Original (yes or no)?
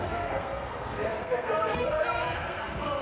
no